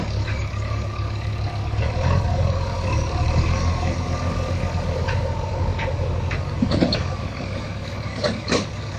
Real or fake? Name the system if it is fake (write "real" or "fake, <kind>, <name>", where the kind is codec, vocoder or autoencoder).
fake, codec, DAC